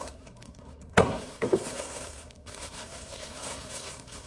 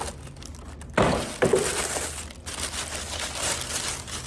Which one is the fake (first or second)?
first